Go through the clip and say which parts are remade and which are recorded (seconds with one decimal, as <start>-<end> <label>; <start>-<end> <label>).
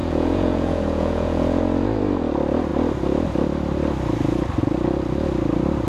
0.0-1.6 remade; 1.6-5.9 recorded